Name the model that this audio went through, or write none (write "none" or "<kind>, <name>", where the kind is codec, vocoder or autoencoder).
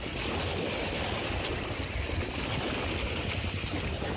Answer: none